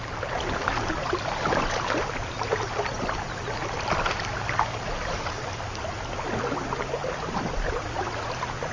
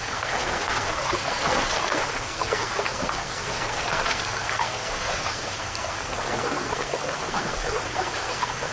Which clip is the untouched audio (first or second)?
first